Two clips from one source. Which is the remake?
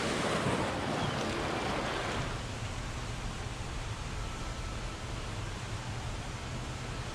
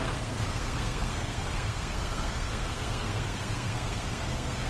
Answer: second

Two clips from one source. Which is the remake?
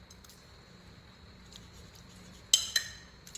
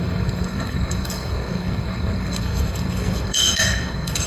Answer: second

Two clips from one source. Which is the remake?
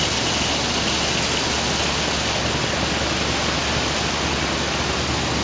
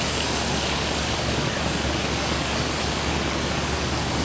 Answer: second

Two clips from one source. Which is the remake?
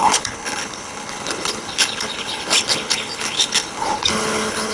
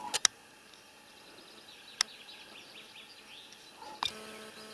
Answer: first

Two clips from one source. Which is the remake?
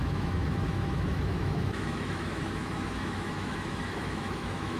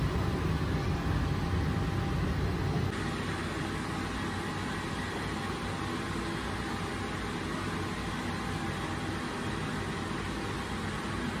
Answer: first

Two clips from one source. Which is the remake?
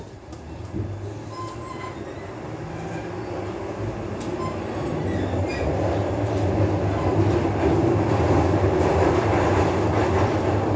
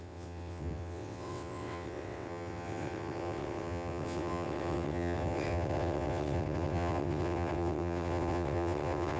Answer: second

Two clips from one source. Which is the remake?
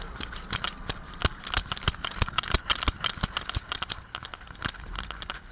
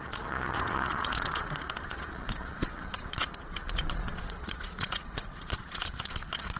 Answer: second